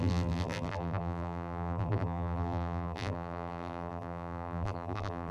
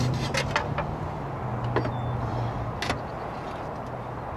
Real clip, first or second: second